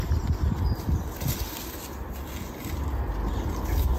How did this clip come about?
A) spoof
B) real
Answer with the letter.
B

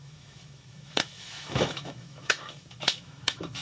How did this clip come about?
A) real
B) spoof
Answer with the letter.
B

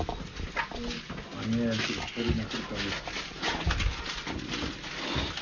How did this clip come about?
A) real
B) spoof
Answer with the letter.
A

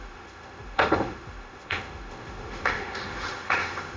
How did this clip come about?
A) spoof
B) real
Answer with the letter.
A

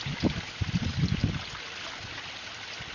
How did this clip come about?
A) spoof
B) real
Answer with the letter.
B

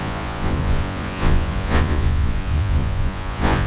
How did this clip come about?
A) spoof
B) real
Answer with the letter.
A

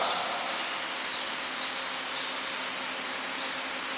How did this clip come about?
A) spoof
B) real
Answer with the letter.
B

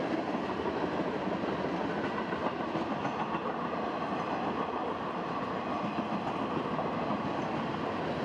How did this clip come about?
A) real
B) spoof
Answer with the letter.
A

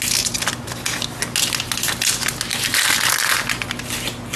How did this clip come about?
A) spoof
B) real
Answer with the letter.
B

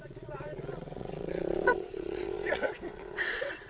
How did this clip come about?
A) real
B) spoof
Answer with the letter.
B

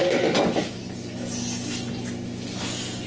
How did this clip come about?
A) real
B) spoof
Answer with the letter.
A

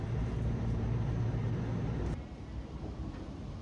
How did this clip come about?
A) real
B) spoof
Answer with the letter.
A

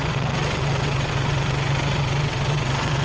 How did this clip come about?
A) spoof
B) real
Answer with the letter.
A